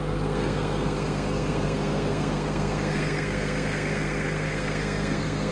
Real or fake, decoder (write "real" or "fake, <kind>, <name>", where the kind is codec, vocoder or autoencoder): fake, codec, SNAC